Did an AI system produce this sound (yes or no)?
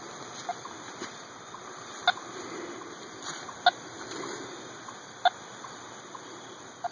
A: no